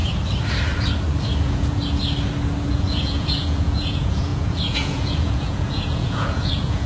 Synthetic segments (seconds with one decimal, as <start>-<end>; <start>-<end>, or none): 1.4-1.8; 2.7-6.9